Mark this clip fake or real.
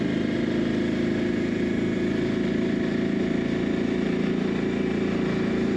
real